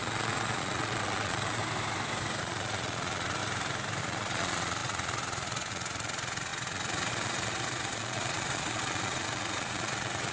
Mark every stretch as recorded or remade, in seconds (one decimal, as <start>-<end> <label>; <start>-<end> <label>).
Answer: 0.0-1.6 remade; 1.6-2.4 recorded; 2.4-3.4 remade; 3.4-4.0 recorded; 4.0-10.3 remade